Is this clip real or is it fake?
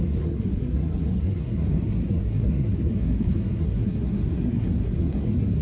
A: fake